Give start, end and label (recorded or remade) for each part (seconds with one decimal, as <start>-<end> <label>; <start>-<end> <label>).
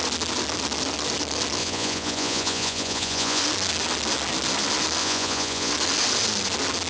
0.0-1.6 recorded; 1.6-3.4 remade; 3.4-5.0 recorded; 5.0-5.7 remade; 5.7-6.9 recorded